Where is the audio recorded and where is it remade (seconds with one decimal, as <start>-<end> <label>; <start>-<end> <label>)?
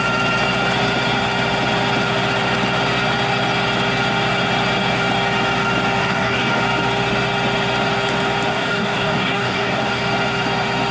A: 0.0-6.0 recorded; 6.0-6.6 remade; 6.6-8.5 recorded; 8.5-10.0 remade; 10.0-10.9 recorded